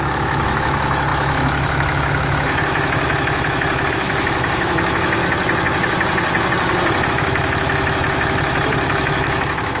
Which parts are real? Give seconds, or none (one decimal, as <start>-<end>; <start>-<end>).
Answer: 5.2-7.1